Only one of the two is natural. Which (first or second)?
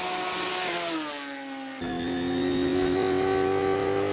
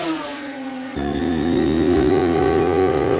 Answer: first